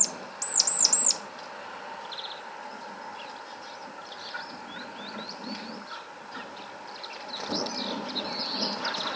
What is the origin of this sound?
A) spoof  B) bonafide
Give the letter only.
B